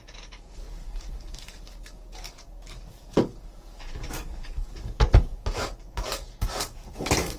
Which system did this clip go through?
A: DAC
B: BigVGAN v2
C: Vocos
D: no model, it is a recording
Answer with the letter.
A